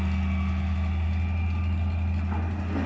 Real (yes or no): yes